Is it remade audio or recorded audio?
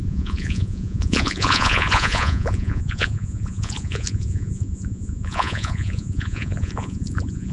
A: remade